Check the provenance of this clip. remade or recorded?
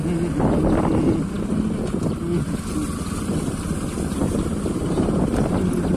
recorded